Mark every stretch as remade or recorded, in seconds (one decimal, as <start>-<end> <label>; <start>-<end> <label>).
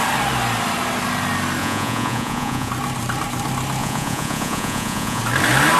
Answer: 0.0-1.6 recorded; 1.6-2.7 remade; 2.7-3.8 recorded; 3.8-5.2 remade; 5.2-5.8 recorded